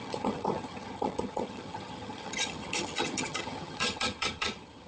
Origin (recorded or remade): remade